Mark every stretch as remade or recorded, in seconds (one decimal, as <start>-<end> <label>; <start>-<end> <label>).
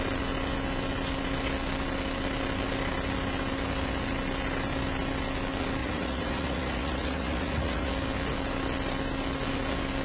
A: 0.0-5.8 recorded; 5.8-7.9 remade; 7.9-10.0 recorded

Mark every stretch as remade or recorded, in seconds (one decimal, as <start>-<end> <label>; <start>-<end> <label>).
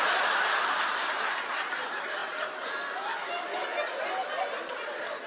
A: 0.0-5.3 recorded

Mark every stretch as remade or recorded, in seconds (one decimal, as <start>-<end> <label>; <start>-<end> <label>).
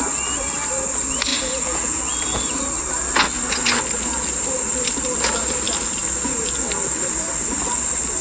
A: 0.0-1.3 recorded; 1.3-2.0 remade; 2.0-8.2 recorded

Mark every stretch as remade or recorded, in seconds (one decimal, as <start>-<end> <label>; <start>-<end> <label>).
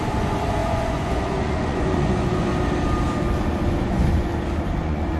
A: 0.0-2.5 remade; 2.5-3.8 recorded; 3.8-4.3 remade; 4.3-4.8 recorded; 4.8-5.2 remade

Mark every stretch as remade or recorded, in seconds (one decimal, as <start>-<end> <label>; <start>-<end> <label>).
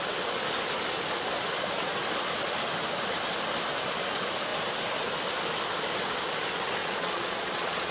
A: 0.0-6.8 recorded; 6.8-7.9 remade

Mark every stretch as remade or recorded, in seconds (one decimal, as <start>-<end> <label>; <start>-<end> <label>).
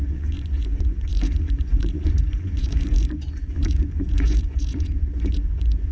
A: 0.0-5.9 remade